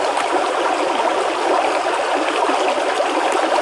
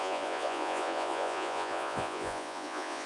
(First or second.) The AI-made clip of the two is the second